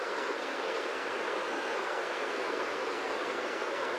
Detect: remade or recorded remade